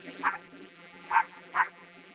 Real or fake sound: fake